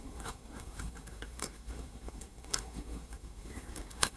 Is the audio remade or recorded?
remade